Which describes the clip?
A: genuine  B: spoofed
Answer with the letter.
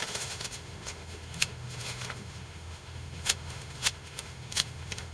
B